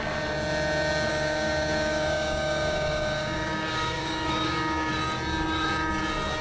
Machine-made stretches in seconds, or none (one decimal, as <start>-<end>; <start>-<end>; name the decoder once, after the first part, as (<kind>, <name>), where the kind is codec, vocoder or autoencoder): 1.1-4.9 (codec, DAC)